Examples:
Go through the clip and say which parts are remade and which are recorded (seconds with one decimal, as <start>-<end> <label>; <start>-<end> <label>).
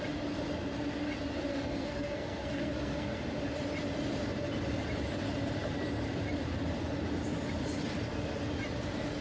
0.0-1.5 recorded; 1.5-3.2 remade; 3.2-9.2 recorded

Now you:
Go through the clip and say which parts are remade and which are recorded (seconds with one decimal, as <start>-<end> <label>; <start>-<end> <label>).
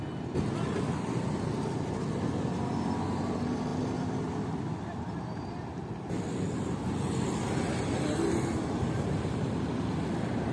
0.0-10.5 recorded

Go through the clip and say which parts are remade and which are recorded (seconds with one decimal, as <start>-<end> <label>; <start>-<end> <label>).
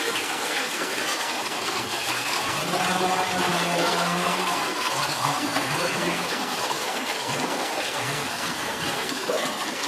0.0-2.6 remade; 2.6-3.4 recorded; 3.4-9.9 remade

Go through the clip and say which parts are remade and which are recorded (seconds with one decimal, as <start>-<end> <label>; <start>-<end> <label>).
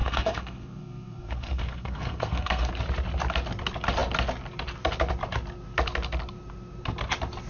0.0-2.7 remade; 2.7-7.5 recorded